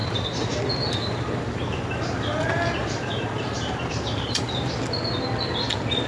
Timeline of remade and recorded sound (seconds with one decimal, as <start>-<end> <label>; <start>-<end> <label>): 0.0-0.6 remade; 0.6-1.0 recorded; 1.0-4.7 remade; 4.7-6.1 recorded